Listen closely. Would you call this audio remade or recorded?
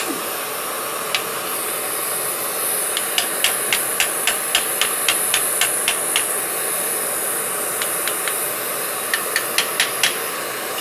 recorded